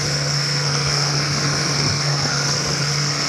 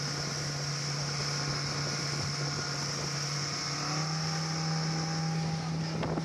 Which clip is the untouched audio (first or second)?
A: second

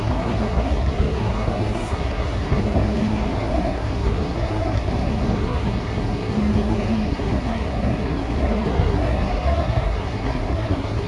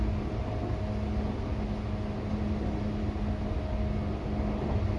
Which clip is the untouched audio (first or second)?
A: second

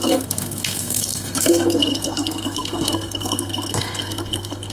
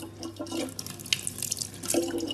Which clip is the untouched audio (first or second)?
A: second